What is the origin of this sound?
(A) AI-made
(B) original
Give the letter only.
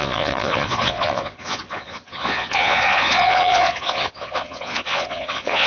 A